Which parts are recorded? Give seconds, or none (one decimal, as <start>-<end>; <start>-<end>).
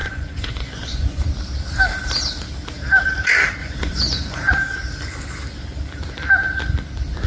1.2-3.6; 4.5-7.3